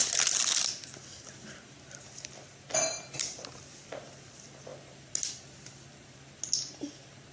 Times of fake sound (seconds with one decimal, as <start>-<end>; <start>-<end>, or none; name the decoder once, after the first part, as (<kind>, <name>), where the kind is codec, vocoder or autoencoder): none